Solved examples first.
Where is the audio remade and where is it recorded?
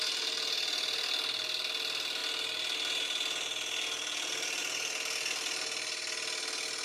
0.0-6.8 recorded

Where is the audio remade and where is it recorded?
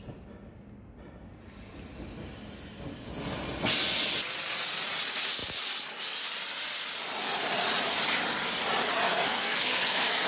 0.0-9.1 recorded; 9.1-10.3 remade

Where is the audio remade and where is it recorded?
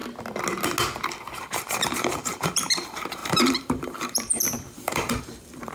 0.0-1.4 recorded; 1.4-5.7 remade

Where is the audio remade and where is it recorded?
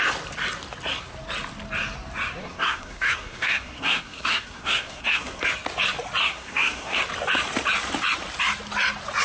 0.0-2.4 recorded; 2.4-5.4 remade; 5.4-6.2 recorded; 6.2-7.0 remade; 7.0-9.2 recorded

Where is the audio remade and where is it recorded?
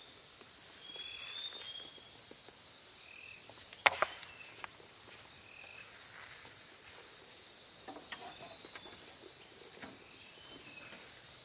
0.0-11.4 recorded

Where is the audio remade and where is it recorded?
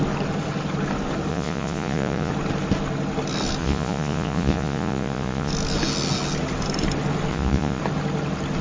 0.0-1.3 recorded; 1.3-2.3 remade; 2.3-3.6 recorded; 3.6-5.5 remade; 5.5-7.3 recorded; 7.3-7.8 remade; 7.8-8.6 recorded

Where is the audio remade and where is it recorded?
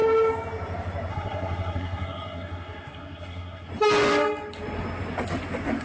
0.0-1.1 recorded; 1.1-3.7 remade; 3.7-5.8 recorded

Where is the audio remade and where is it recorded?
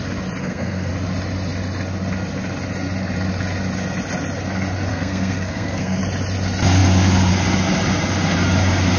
0.0-0.4 recorded; 0.4-0.9 remade; 0.9-4.9 recorded; 4.9-6.0 remade; 6.0-9.0 recorded